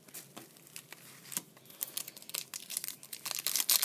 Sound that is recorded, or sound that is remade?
recorded